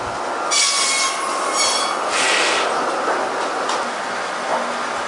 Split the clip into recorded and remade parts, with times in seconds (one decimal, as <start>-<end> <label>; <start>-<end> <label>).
0.0-5.1 recorded